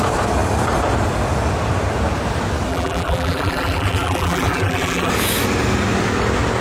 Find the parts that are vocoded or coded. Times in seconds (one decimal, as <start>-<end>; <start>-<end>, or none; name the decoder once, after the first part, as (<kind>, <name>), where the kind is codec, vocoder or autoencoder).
2.7-5.1 (vocoder, BigVGAN v2)